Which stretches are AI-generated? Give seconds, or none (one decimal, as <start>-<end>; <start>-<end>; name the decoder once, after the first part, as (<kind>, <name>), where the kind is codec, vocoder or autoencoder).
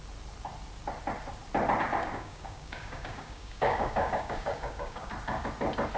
2.0-5.1 (codec, DAC)